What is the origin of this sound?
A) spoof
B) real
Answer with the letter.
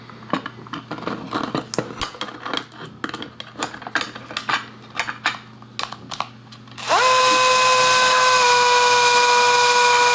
B